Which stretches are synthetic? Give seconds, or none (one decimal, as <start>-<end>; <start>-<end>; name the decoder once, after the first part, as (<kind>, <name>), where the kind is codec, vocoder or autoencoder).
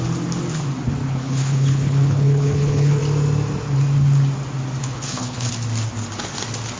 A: 1.0-3.0 (codec, HILCodec); 4.8-5.5